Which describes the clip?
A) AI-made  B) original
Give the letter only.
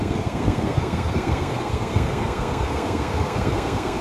A